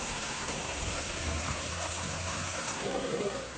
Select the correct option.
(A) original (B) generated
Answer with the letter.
B